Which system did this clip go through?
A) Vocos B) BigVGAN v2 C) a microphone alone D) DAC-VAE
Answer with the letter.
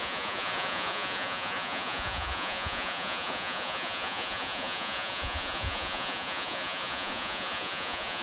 A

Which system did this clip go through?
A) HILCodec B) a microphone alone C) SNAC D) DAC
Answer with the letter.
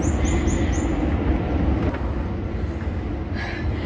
B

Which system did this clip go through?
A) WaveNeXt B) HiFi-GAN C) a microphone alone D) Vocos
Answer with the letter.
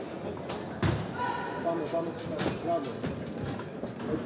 C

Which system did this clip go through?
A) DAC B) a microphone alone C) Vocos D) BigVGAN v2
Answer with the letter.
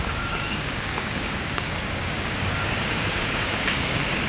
A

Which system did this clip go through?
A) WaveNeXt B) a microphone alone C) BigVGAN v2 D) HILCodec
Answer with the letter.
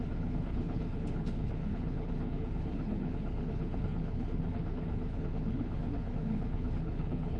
D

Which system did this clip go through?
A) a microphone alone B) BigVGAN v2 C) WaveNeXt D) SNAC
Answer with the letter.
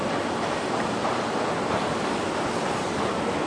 A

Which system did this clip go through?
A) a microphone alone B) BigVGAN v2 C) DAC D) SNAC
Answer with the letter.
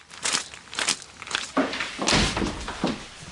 A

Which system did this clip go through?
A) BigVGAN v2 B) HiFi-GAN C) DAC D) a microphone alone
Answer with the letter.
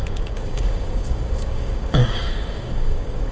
C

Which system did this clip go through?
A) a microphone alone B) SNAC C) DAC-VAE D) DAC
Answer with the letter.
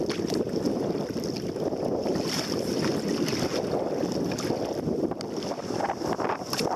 A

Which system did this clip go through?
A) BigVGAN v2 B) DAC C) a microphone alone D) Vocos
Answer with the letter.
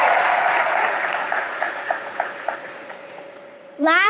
D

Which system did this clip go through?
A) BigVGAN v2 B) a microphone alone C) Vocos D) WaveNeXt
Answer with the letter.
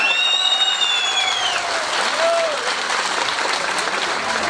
B